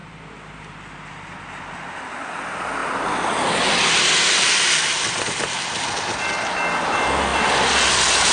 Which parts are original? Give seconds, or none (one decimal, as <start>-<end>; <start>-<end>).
0.0-8.3